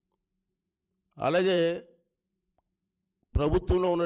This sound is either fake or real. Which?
fake